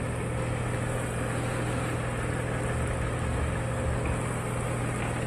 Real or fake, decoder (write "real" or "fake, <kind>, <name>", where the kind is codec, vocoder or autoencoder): real